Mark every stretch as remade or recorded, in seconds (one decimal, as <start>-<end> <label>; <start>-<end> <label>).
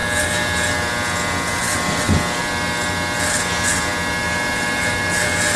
0.0-5.6 recorded